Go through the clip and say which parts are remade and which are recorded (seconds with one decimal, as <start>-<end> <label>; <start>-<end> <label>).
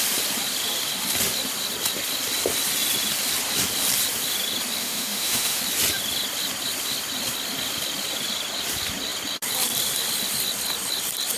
0.0-4.8 recorded; 4.8-5.6 remade; 5.6-11.4 recorded